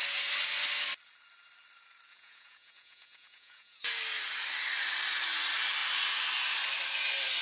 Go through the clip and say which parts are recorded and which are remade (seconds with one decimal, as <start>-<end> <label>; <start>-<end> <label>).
0.0-2.1 recorded; 2.1-3.9 remade; 3.9-7.4 recorded